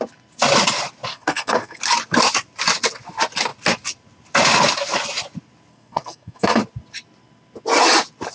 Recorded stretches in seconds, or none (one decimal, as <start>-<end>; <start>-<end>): 0.0-1.1; 1.8-5.7; 6.6-8.3